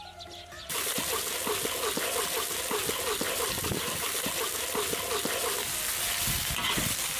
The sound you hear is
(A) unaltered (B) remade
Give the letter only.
A